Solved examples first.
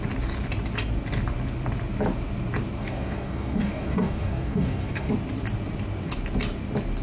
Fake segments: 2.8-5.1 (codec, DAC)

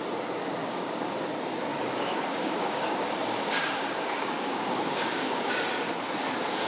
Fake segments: 0.6-1.1 (codec, DAC); 1.7-5.7

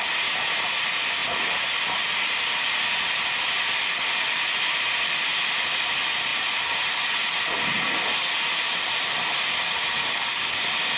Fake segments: 10.0-10.6 (codec, DAC)